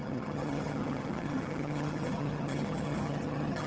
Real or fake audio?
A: fake